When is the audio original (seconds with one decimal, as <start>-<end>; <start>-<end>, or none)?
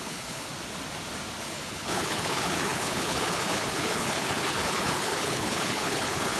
0.5-1.4